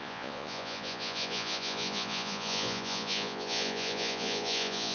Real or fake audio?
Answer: fake